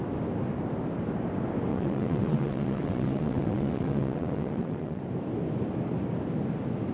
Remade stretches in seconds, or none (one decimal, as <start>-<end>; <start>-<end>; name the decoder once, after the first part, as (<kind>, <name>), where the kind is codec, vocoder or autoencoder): 1.7-5.0 (vocoder, WaveNeXt)